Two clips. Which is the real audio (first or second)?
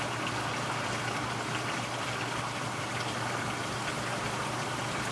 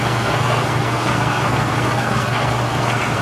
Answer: first